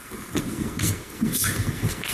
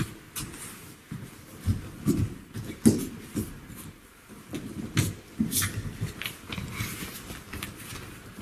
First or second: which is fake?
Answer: first